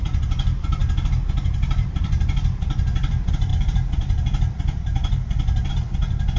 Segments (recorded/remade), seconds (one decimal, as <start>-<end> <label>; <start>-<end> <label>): 0.0-0.8 remade; 0.8-1.4 recorded; 1.4-6.4 remade